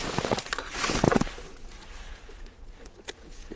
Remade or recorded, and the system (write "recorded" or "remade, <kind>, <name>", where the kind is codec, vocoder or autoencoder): remade, vocoder, Vocos